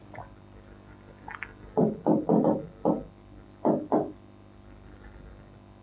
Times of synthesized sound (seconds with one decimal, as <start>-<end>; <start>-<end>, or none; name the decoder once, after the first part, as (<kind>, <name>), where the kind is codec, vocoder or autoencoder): none